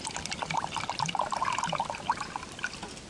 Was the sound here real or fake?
real